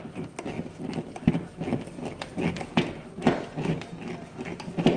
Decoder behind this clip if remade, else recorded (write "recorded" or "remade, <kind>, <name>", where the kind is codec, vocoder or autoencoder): recorded